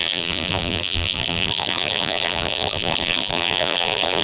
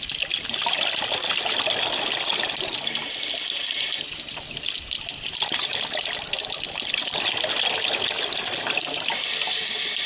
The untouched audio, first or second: second